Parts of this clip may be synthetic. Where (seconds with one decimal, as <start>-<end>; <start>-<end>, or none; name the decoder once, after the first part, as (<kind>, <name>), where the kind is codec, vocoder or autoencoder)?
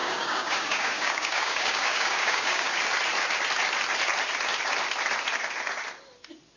0.0-2.8 (codec, DAC)